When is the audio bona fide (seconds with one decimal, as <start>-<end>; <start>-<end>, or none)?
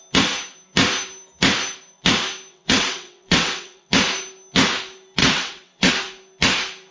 0.0-2.5; 3.9-5.2; 5.9-6.9